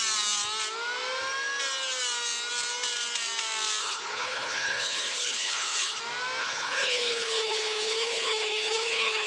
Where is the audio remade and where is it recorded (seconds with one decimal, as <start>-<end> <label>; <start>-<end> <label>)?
0.0-3.8 recorded; 3.8-6.0 remade; 6.0-6.4 recorded; 6.4-9.3 remade